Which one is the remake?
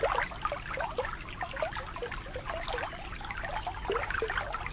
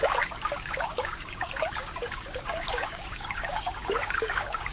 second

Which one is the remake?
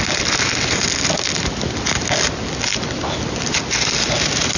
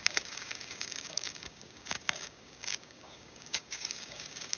second